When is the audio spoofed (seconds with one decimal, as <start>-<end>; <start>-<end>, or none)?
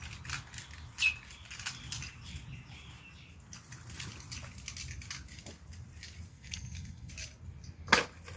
6.3-7.1